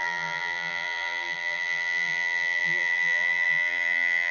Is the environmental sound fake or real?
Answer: fake